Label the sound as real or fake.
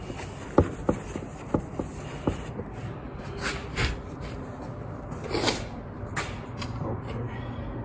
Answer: real